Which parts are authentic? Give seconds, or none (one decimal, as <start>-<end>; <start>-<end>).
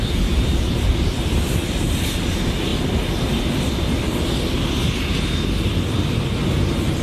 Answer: 0.0-7.0